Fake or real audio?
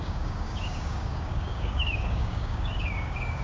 fake